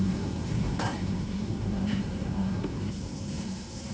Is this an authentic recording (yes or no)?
no